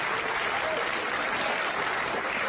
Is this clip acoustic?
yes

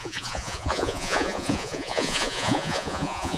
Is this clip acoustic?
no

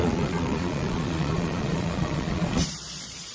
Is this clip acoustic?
no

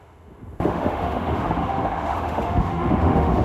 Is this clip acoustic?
no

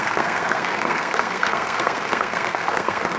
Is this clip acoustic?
no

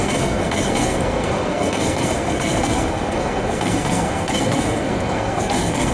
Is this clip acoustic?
no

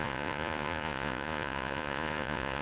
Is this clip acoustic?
no